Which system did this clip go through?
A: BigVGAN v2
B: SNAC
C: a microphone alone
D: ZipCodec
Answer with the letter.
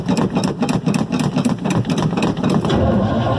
A